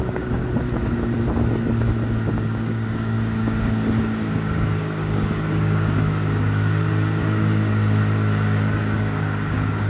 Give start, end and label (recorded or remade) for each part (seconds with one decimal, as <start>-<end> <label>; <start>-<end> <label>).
0.0-0.4 remade; 0.4-2.3 recorded; 2.3-9.9 remade